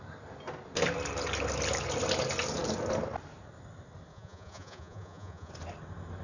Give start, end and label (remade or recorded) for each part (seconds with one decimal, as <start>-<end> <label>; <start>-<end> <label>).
0.0-4.1 recorded; 4.1-5.5 remade; 5.5-6.2 recorded